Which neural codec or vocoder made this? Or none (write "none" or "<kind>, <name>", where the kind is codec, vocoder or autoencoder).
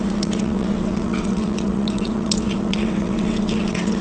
vocoder, WaveNeXt